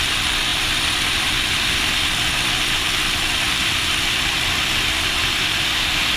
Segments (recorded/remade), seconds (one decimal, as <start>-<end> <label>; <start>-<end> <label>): 0.0-0.5 recorded; 0.5-4.1 remade; 4.1-6.2 recorded